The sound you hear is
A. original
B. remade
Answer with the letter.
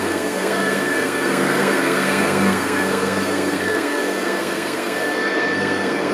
B